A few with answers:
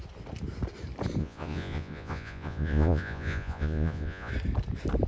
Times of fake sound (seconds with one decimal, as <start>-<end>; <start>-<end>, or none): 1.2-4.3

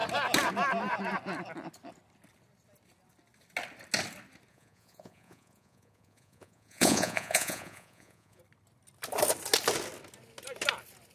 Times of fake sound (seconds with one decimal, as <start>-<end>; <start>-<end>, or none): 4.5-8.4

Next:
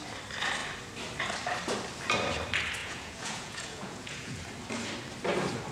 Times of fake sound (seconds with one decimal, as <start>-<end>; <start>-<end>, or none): 2.8-4.4